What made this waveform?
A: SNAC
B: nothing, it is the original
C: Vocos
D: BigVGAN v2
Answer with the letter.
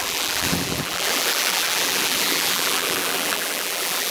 D